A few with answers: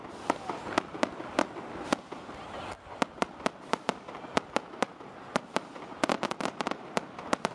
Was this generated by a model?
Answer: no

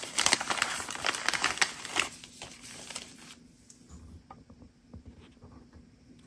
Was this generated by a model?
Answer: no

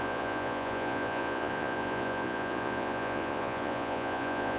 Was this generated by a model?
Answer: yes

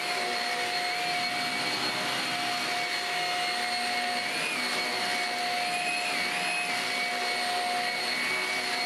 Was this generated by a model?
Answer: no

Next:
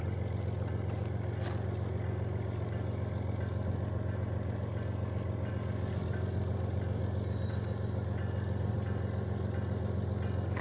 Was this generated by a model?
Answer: no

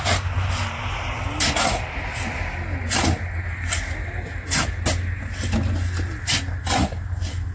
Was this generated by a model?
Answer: no